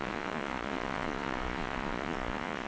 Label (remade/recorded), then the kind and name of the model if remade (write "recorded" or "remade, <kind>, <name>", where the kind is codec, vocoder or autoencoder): remade, vocoder, Vocos